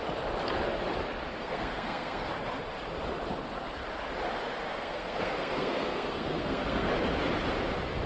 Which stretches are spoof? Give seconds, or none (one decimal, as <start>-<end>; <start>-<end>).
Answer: 1.4-2.3; 4.7-6.9